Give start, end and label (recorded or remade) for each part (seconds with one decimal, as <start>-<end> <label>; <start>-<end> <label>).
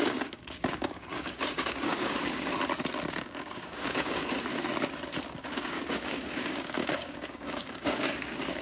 0.0-2.5 remade; 2.5-3.1 recorded; 3.1-4.2 remade; 4.2-5.3 recorded; 5.3-8.6 remade